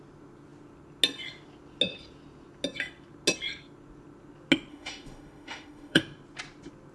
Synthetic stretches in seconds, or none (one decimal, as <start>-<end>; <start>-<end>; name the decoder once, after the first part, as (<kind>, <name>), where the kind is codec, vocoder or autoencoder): 4.7-6.0 (autoencoder, DAC-VAE)